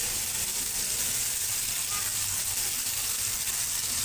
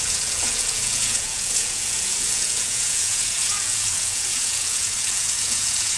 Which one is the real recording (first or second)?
first